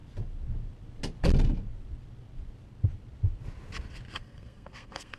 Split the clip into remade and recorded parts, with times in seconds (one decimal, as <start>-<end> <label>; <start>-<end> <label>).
0.0-4.2 recorded; 4.2-5.2 remade